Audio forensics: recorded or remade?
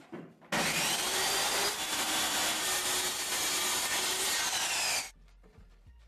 recorded